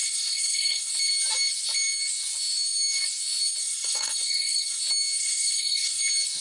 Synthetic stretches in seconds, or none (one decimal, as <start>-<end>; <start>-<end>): 0.0-0.9; 3.6-4.8; 5.2-6.0